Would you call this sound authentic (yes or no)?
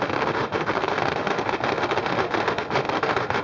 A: no